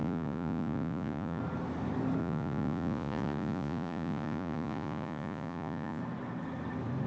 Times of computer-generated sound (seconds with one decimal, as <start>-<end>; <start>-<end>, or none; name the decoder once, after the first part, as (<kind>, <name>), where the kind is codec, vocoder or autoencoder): 0.0-1.4 (vocoder, Vocos); 2.2-6.0